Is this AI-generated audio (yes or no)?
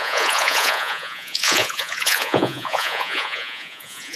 yes